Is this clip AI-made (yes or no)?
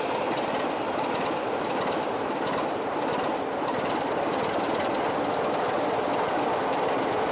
no